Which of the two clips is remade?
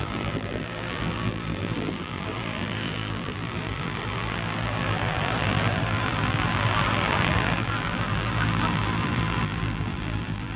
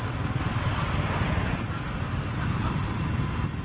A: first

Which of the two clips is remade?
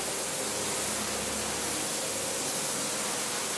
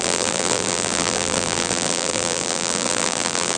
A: second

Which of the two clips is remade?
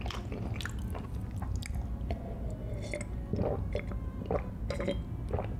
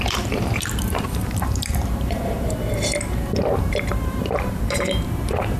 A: second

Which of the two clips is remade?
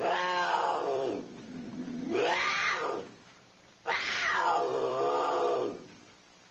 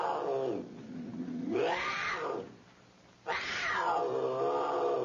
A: first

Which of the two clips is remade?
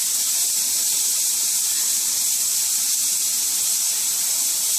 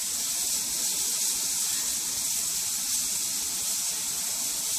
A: first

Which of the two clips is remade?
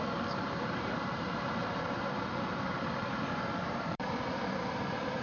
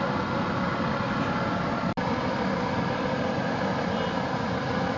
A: first